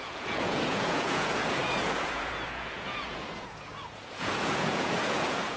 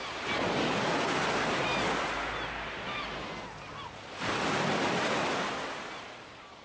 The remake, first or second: first